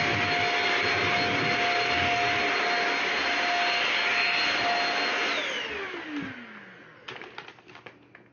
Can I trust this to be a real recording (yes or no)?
yes